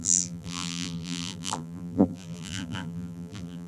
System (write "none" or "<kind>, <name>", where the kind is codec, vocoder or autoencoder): vocoder, BigVGAN v2